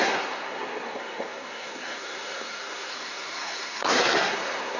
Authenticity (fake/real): fake